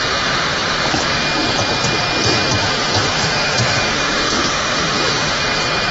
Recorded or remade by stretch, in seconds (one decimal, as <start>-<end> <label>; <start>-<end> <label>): 0.0-2.6 recorded; 2.6-5.4 remade; 5.4-5.9 recorded